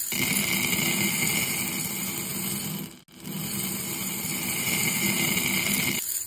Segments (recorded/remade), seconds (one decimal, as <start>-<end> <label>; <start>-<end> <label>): 0.0-6.3 recorded